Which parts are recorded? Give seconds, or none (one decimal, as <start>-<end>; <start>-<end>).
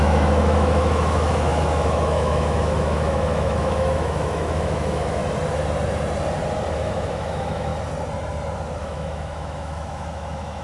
5.2-6.7; 7.7-8.8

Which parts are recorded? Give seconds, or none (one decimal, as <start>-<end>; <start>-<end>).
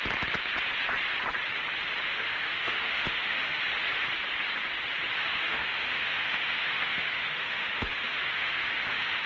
0.0-2.1; 3.6-5.2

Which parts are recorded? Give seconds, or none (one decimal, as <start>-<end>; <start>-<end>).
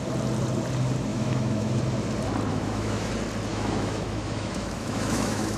0.0-1.1; 1.8-2.5; 3.1-3.5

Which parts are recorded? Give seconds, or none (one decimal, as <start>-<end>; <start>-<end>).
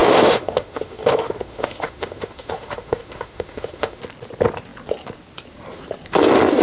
4.0-6.6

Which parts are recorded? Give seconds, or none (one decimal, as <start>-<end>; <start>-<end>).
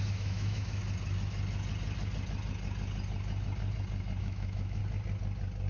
0.8-4.2; 4.8-5.7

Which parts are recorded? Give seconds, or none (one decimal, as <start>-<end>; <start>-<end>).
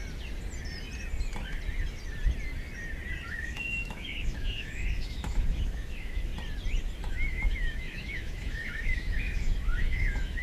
0.0-3.3; 6.3-7.1